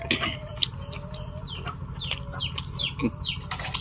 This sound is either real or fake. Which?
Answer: real